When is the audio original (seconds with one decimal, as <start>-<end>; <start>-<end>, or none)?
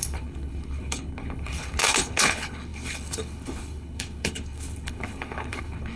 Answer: none